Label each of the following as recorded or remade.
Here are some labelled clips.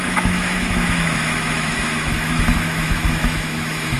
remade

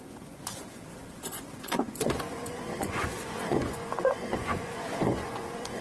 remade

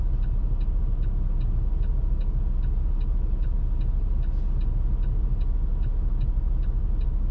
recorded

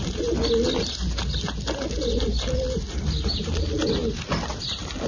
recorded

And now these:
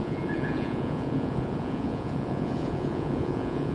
remade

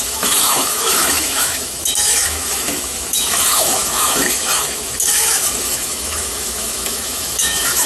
remade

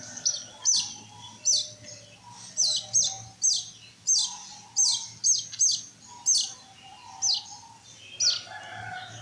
recorded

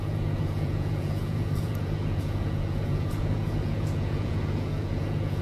remade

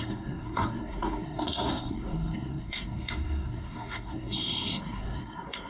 remade